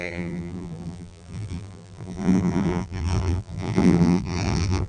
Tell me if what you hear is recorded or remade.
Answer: remade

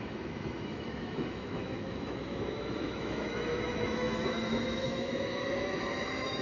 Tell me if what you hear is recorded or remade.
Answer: remade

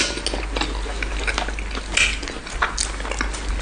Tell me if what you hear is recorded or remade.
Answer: recorded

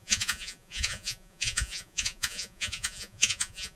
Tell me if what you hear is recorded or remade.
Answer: remade